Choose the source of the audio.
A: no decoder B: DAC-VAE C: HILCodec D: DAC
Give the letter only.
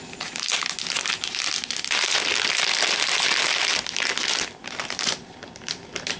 A